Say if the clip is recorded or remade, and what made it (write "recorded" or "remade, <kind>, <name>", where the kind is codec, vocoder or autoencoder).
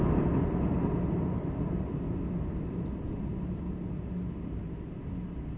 recorded